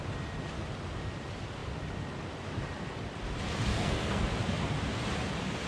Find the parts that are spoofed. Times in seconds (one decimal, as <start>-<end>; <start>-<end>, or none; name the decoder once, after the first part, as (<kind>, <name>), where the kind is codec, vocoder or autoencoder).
3.7-4.2 (codec, SNAC)